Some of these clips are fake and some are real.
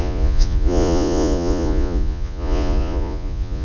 fake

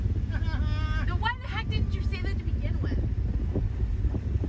real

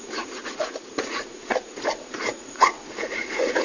fake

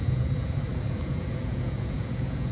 fake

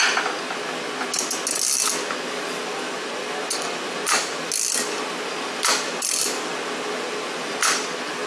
real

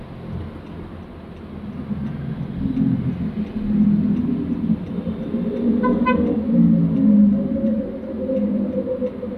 real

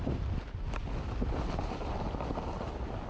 real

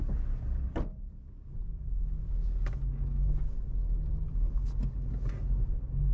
real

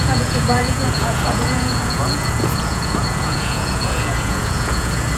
fake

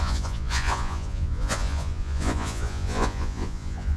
fake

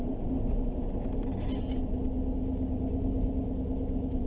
real